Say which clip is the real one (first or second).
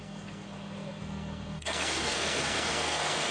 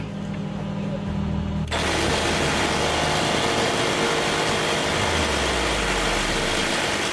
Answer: second